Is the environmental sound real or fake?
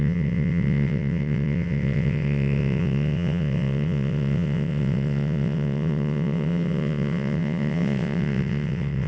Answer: fake